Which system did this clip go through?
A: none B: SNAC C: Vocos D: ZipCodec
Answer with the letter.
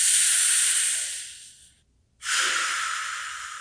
A